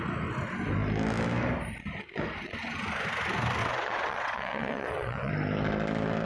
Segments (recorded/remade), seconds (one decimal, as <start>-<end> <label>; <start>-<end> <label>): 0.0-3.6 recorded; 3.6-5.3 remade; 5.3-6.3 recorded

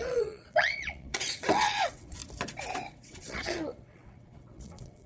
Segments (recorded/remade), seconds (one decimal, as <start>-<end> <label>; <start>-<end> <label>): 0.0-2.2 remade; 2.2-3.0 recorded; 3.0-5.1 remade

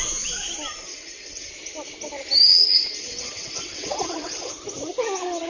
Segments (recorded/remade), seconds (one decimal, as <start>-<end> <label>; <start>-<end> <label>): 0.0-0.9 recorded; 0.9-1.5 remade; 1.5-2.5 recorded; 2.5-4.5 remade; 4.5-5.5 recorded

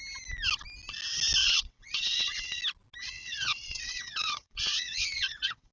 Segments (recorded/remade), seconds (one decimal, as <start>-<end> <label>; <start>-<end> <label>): 0.0-1.4 recorded; 1.4-2.6 remade; 2.6-3.0 recorded; 3.0-5.7 remade

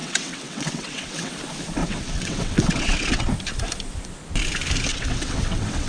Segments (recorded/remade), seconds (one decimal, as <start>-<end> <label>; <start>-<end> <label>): 0.0-1.3 remade; 1.3-1.8 recorded; 1.8-3.3 remade; 3.3-4.9 recorded; 4.9-5.9 remade

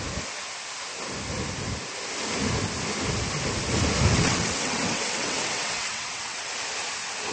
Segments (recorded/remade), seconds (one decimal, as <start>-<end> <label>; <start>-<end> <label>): 0.0-4.1 recorded; 4.1-6.5 remade; 6.5-7.3 recorded

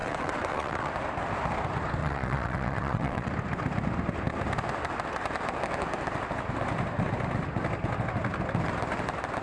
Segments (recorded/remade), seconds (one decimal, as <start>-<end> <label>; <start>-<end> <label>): 0.0-0.9 remade; 0.9-2.0 recorded; 2.0-3.3 remade; 3.3-9.4 recorded

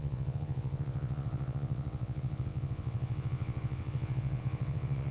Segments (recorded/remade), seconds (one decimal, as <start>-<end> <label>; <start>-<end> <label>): 0.0-5.1 remade